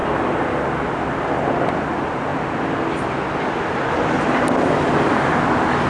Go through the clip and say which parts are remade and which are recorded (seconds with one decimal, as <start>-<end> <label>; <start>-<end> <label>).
0.0-5.9 recorded